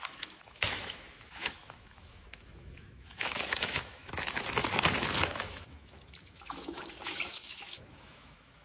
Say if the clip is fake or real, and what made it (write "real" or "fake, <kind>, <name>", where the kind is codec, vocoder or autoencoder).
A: fake, autoencoder, DAC-VAE